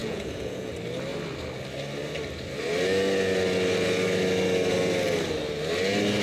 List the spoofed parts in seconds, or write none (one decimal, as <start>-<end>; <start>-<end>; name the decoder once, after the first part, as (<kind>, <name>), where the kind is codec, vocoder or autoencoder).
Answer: 0.0-0.7 (vocoder, Vocos)